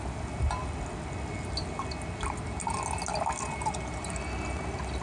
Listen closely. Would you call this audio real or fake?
real